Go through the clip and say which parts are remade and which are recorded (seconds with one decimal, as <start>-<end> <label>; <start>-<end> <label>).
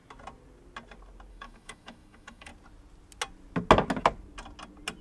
0.0-1.3 recorded; 1.3-2.5 remade; 2.5-5.0 recorded